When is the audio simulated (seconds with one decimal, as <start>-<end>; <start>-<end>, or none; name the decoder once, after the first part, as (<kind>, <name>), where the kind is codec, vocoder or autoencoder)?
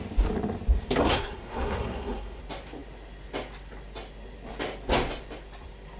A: 1.0-2.4 (codec, SNAC)